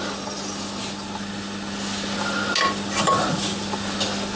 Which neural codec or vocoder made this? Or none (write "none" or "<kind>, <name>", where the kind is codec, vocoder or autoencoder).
none